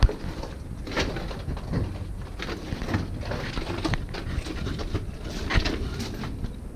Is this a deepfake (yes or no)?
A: no